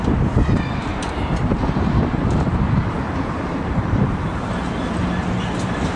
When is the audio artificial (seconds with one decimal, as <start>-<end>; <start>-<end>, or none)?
0.9-4.5